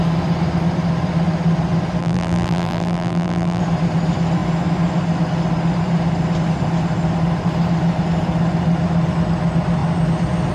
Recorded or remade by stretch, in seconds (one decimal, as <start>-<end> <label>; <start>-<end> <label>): 0.0-2.0 recorded; 2.0-3.6 remade; 3.6-10.5 recorded